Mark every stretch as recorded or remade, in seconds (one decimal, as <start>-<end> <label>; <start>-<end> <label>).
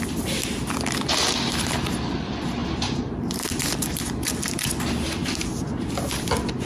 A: 0.0-2.6 recorded; 2.6-4.0 remade; 4.0-6.7 recorded